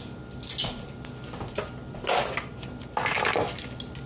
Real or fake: real